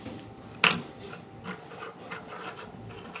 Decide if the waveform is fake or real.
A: real